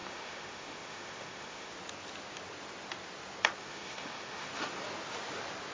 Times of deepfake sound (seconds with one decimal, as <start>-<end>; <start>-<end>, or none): 0.0-1.7; 3.6-4.5

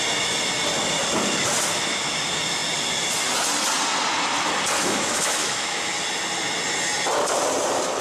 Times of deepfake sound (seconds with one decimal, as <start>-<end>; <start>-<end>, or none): 4.8-5.9

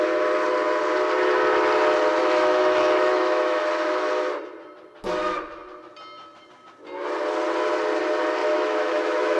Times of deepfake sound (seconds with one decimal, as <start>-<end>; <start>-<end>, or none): 2.2-4.1; 8.4-9.4

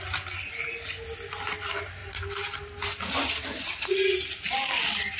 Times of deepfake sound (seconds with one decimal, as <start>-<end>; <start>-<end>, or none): none

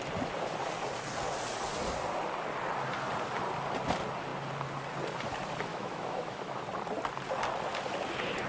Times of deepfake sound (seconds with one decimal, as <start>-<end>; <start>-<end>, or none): 5.7-6.6